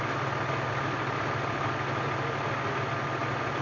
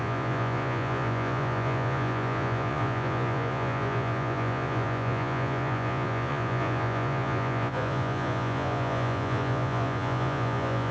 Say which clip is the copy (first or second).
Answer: second